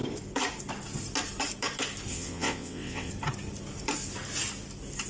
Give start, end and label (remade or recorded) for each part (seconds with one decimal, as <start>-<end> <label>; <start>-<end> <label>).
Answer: 0.0-2.1 recorded; 2.1-3.1 remade; 3.1-5.1 recorded